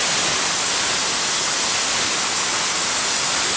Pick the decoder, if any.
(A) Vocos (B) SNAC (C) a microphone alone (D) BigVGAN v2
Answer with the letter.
C